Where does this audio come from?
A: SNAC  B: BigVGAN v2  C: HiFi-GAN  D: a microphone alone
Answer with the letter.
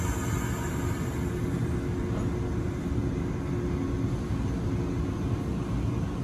D